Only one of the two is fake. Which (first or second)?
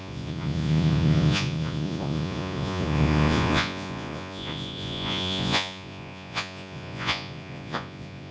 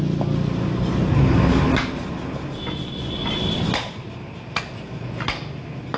first